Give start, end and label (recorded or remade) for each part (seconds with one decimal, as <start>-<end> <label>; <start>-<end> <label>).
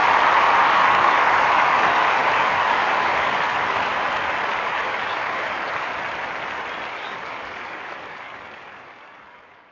0.0-0.6 recorded; 0.6-3.9 remade; 3.9-4.5 recorded; 4.5-5.9 remade; 5.9-6.9 recorded; 6.9-9.7 remade